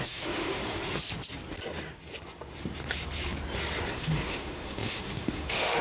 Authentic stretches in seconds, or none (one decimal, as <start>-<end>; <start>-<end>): 0.6-3.9